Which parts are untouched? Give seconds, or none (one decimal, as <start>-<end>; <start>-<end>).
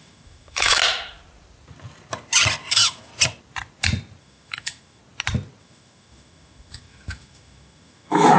0.8-2.7; 3.1-4.2; 5.0-5.6